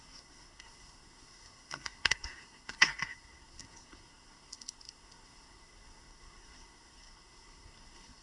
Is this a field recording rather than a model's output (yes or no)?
no